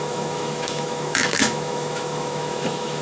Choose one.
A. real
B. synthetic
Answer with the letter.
B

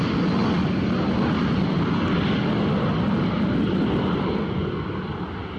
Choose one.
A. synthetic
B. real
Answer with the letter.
B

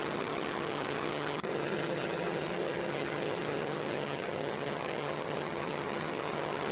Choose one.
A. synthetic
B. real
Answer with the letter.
A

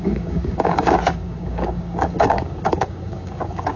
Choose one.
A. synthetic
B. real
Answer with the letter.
A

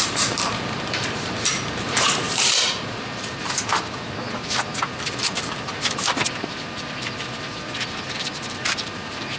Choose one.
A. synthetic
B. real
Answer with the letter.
A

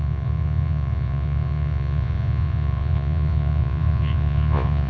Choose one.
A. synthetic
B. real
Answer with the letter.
A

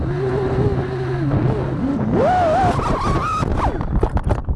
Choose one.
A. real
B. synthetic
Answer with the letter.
A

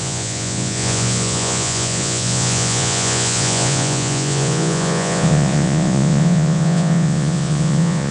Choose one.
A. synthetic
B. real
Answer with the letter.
A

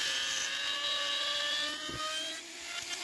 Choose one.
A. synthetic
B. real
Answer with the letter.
B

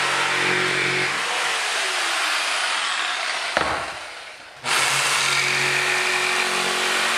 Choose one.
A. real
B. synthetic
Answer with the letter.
A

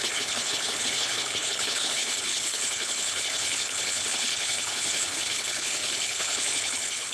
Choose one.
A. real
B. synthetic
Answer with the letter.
B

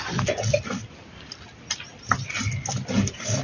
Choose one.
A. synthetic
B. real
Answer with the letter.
B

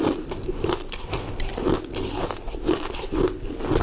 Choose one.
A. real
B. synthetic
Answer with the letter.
A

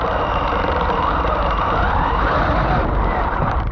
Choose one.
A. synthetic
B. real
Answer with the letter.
A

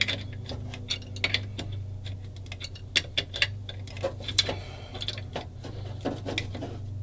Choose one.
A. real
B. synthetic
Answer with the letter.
A